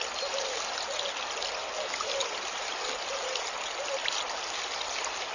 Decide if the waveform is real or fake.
real